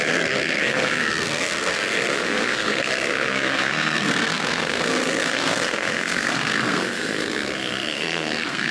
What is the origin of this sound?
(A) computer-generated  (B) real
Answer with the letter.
A